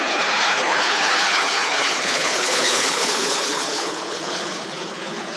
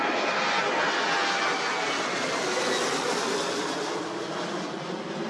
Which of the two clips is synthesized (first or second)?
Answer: first